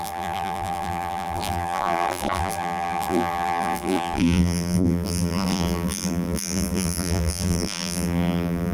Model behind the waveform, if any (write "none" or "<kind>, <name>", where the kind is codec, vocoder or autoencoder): vocoder, BigVGAN v2